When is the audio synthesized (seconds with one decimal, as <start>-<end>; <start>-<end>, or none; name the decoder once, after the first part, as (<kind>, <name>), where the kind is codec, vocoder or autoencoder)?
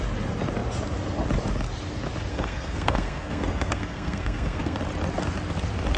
2.3-4.8 (codec, SNAC)